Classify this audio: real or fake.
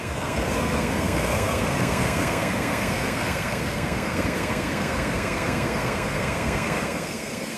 fake